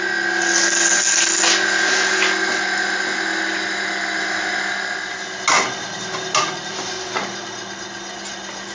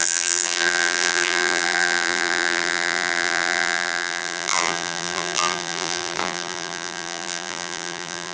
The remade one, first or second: second